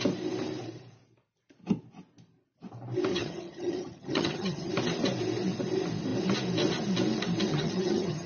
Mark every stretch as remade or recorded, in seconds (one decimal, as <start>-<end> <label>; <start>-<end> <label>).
0.0-3.1 recorded; 3.1-4.7 remade; 4.7-7.5 recorded; 7.5-8.3 remade